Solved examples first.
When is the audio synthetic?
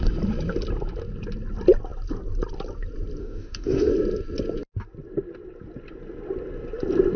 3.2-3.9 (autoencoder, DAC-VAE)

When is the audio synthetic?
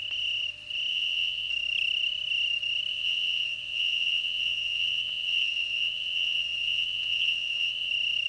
0.9-1.5 (vocoder, WaveNeXt); 2.9-7.9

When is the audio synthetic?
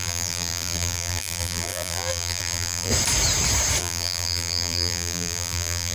0.0-2.9 (vocoder, BigVGAN v2); 3.8-5.9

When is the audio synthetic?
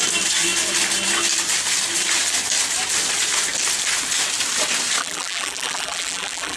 5.0-6.6 (vocoder, BigVGAN v2)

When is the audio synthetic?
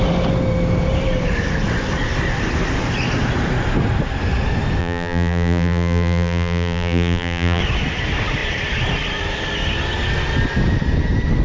4.8-7.6 (vocoder, BigVGAN v2)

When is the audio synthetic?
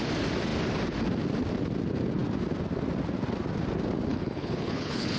4.1-5.2 (codec, HILCodec)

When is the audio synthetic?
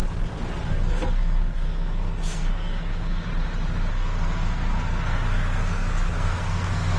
0.7-3.3 (codec, SNAC); 3.9-7.0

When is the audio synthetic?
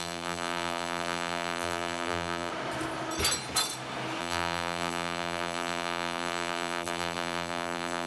0.0-2.5 (vocoder, BigVGAN v2); 4.2-8.1